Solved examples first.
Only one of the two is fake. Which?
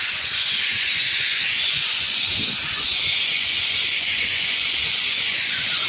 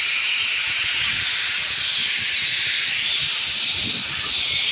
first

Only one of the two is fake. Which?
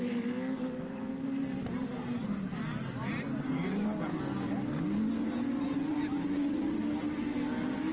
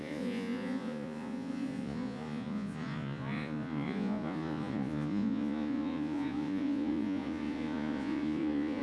second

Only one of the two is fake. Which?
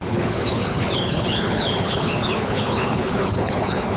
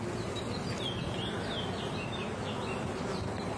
first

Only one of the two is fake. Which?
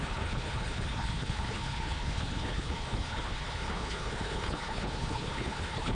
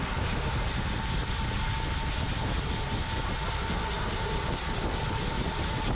first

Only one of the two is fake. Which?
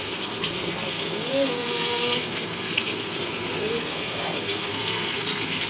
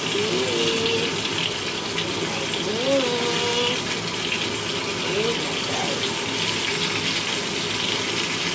first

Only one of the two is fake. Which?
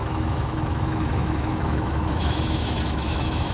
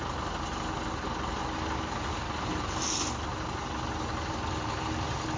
first